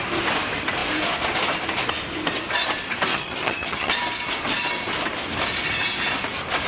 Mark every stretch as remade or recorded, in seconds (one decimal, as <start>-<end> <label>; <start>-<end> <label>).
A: 0.0-3.1 recorded; 3.1-3.9 remade; 3.9-6.7 recorded